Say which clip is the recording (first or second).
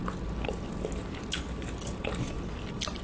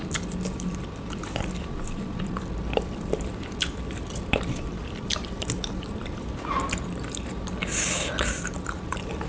first